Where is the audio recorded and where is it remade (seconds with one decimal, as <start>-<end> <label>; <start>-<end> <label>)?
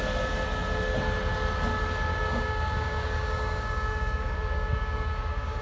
0.0-2.1 recorded; 2.1-5.6 remade